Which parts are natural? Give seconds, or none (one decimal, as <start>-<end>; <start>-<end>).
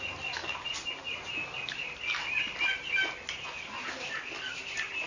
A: 0.0-5.1